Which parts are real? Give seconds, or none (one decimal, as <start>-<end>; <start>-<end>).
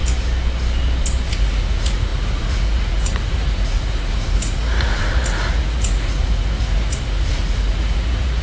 0.0-1.3